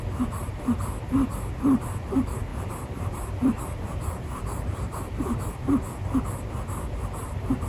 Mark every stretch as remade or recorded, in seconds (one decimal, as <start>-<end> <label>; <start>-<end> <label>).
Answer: 0.0-2.5 recorded; 2.5-5.0 remade; 5.0-7.7 recorded